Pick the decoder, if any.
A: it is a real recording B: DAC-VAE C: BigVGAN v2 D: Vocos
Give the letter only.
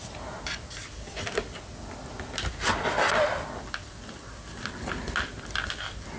A